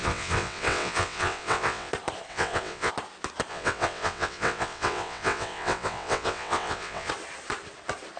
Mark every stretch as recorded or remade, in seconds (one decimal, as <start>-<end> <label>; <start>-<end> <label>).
0.0-1.9 remade; 1.9-2.3 recorded; 2.3-2.9 remade; 2.9-3.5 recorded; 3.5-7.1 remade; 7.1-8.2 recorded